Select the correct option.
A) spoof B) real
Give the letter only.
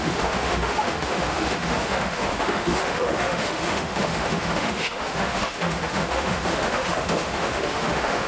A